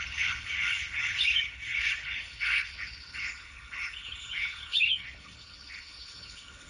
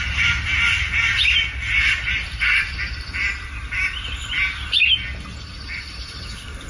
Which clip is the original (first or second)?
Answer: second